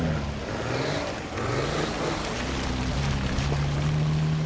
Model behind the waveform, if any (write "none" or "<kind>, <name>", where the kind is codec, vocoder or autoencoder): none